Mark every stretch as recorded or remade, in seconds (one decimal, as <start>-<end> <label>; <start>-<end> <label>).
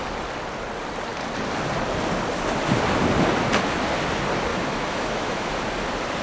0.0-4.5 recorded; 4.5-5.5 remade; 5.5-6.2 recorded